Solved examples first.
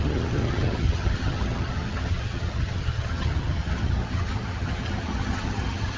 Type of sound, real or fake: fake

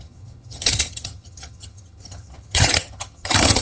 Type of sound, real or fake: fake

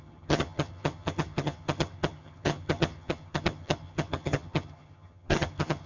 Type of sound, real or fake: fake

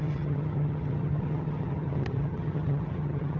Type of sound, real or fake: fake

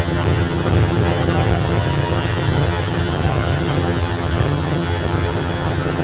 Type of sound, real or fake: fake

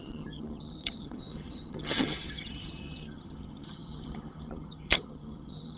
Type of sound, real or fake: fake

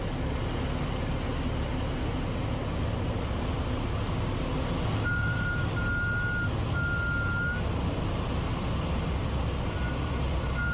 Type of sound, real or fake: real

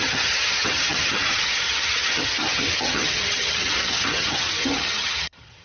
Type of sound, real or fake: fake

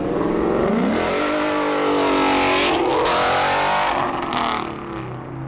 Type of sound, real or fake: real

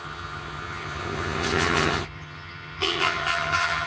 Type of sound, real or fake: fake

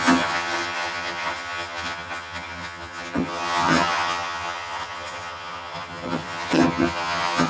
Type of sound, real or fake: fake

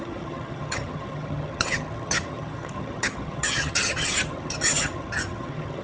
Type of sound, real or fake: fake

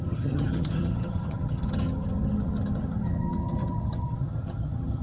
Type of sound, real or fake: fake